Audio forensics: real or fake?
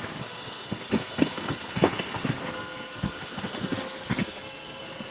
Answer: fake